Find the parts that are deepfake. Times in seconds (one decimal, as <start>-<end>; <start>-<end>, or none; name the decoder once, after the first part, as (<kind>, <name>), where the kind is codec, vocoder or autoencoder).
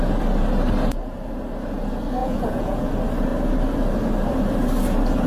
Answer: 2.2-2.9 (vocoder, Vocos)